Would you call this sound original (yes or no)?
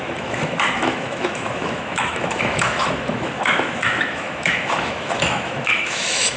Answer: no